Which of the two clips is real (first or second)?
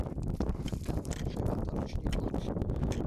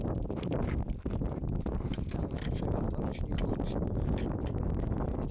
second